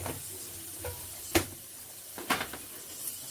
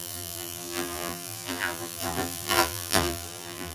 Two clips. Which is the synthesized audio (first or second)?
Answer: second